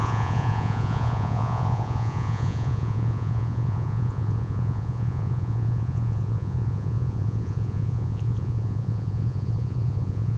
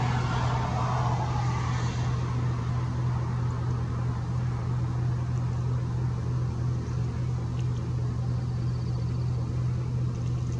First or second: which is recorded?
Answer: second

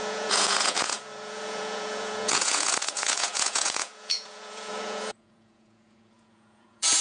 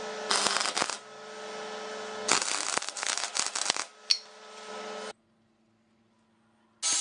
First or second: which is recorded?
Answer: second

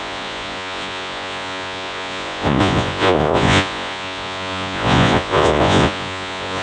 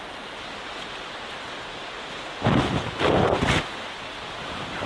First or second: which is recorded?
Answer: second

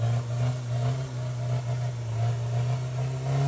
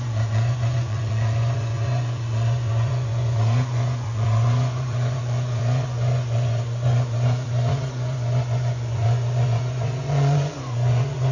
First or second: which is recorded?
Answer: first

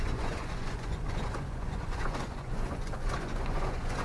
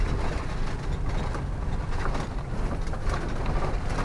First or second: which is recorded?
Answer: second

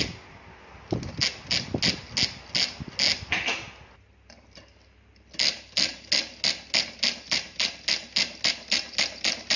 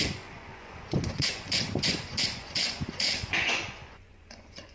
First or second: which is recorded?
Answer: first